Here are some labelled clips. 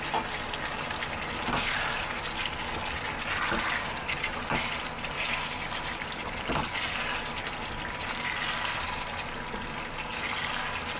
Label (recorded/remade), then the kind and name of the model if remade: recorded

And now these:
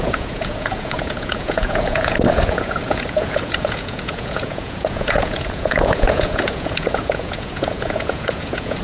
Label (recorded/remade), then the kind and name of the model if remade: remade, vocoder, Vocos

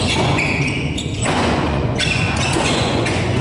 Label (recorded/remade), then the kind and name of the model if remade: remade, vocoder, Vocos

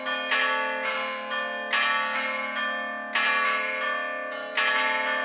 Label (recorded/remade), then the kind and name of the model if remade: recorded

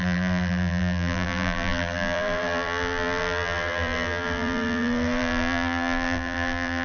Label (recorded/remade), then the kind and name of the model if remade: remade, vocoder, BigVGAN v2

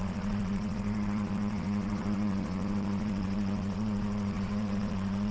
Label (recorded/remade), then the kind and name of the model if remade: remade, vocoder, Vocos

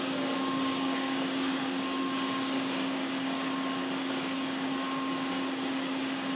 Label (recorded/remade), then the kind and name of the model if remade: remade, codec, DAC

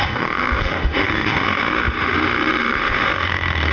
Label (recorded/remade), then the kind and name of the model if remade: remade, autoencoder, DAC-VAE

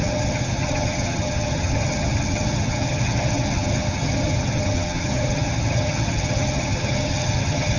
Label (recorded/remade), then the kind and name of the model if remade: remade, vocoder, HiFi-GAN